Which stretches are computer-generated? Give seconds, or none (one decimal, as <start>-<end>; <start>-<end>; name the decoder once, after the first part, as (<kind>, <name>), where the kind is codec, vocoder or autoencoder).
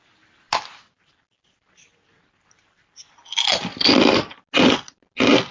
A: none